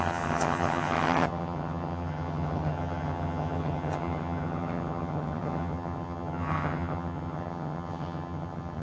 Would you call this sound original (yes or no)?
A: no